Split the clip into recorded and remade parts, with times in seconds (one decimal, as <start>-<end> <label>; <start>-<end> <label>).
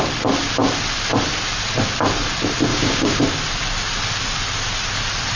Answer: 0.0-2.7 recorded; 2.7-3.2 remade; 3.2-5.4 recorded